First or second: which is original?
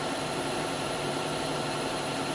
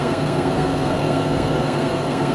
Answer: first